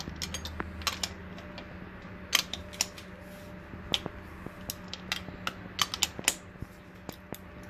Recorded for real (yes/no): yes